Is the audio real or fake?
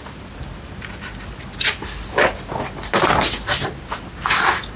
real